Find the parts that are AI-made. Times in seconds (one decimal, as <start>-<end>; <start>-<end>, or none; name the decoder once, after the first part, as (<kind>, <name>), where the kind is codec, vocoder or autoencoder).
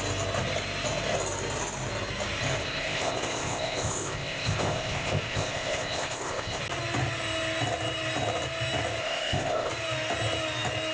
2.6-6.6 (codec, ZipCodec); 9.0-9.7